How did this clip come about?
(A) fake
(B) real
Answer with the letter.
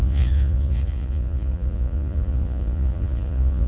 A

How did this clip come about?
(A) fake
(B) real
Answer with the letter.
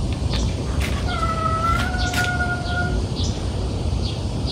A